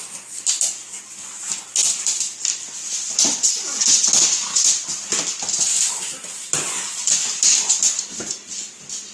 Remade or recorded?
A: recorded